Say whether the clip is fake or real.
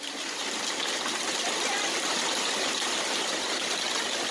real